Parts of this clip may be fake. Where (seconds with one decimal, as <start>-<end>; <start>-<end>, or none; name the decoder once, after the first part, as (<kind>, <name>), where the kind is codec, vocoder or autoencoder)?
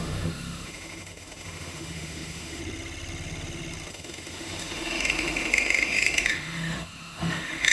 0.0-2.6 (autoencoder, DAC-VAE); 3.9-7.7